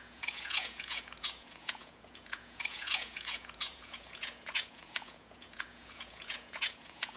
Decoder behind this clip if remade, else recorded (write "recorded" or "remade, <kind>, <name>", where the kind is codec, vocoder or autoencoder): remade, vocoder, Vocos